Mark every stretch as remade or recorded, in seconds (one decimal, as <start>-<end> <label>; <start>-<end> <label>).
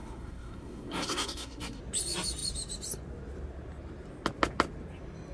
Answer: 0.0-1.8 remade; 1.8-5.3 recorded